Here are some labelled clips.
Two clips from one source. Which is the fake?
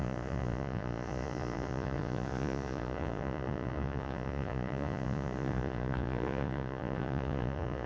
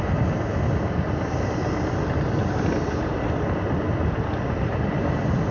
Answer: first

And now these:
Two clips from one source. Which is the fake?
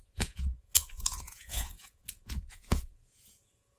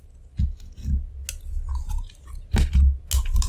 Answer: first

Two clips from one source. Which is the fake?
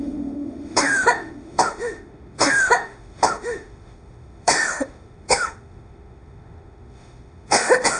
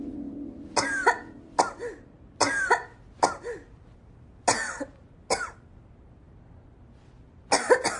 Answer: first